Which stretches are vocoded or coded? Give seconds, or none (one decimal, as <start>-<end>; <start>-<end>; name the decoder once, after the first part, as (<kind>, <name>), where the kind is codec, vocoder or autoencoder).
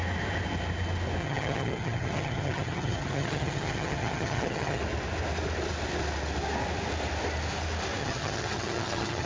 1.2-4.8 (vocoder, HiFi-GAN); 8.0-9.3